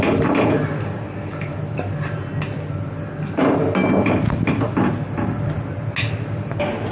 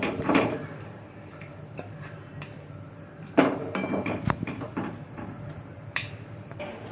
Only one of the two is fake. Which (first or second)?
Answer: second